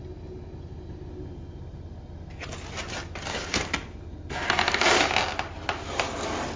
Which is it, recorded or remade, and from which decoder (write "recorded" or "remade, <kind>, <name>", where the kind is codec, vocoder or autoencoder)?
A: recorded